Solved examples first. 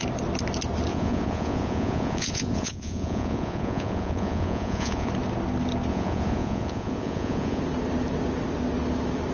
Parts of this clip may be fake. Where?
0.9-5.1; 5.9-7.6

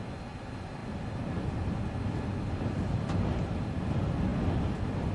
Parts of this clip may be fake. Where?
none

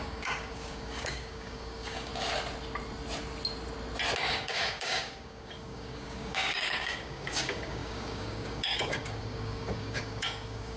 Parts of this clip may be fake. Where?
0.0-2.1; 4.3-10.8

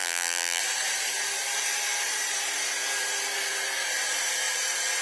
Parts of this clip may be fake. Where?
0.0-0.6

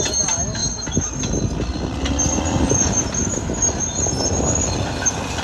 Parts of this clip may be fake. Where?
none

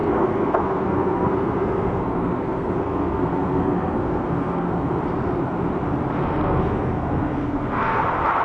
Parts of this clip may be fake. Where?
0.0-5.0; 6.2-8.0

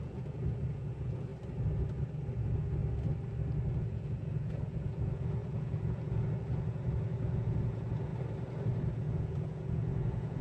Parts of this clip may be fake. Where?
0.0-1.3; 2.3-2.8; 3.8-8.1; 8.9-10.4